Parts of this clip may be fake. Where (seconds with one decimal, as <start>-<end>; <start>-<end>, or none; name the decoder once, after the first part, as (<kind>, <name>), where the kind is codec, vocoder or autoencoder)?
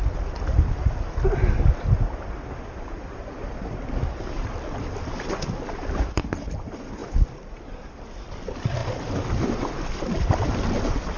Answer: none